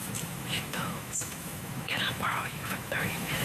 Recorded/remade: remade